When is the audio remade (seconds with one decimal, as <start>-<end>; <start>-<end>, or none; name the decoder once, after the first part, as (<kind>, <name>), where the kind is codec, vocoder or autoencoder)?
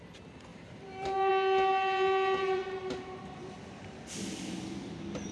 0.5-1.3 (vocoder, BigVGAN v2); 2.6-3.6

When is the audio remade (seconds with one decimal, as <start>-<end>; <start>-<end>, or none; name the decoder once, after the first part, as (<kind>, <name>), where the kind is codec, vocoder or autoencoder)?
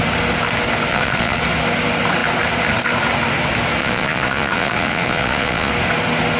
0.9-1.4 (vocoder, Vocos); 3.8-5.7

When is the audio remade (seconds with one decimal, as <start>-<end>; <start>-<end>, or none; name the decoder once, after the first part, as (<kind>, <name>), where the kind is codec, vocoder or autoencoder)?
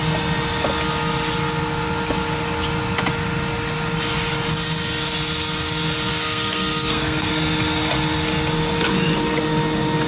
6.1-7.3 (codec, SNAC)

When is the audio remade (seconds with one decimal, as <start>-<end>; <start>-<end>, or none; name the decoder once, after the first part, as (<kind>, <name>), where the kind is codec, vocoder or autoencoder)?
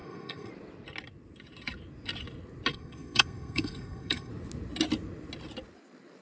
0.0-0.5 (codec, SNAC); 2.7-4.3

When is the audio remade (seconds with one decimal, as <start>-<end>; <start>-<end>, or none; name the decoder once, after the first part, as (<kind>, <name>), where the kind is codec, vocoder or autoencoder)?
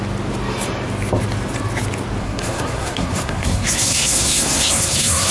2.2-5.3 (codec, SNAC)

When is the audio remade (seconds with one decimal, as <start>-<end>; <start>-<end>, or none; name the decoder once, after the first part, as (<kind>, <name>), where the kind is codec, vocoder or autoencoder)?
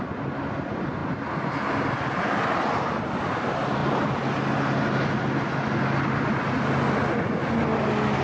none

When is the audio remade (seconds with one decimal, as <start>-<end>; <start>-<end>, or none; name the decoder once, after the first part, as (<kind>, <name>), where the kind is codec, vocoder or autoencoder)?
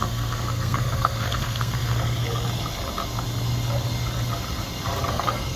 0.0-2.2 (codec, SNAC); 5.1-5.6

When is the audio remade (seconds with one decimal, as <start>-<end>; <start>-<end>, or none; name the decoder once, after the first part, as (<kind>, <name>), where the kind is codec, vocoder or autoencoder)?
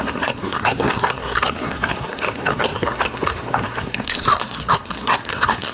0.0-5.7 (codec, SNAC)